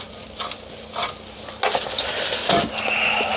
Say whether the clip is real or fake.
real